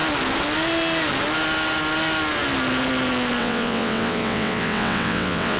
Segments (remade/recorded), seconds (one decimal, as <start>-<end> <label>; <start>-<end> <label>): 0.0-3.4 recorded; 3.4-5.6 remade